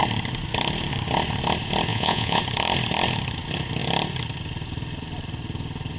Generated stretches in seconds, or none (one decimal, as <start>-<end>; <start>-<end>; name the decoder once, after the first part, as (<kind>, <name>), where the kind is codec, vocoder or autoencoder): 1.9-2.4 (vocoder, Vocos)